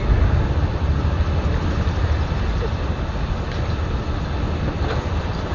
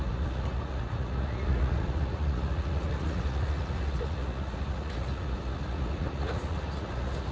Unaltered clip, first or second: first